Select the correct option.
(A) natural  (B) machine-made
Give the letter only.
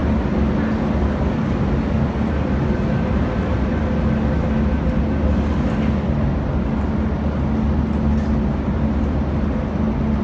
A